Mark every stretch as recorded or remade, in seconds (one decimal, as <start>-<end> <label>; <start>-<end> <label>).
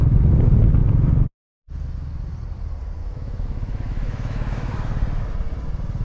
0.0-3.0 recorded; 3.0-4.9 remade; 4.9-6.0 recorded